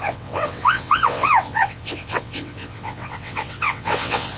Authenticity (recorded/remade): remade